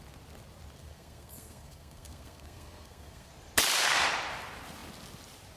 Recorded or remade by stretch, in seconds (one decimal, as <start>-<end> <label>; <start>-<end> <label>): 0.0-0.8 recorded; 0.8-3.3 remade; 3.3-5.6 recorded